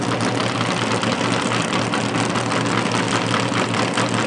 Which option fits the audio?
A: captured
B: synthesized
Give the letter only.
A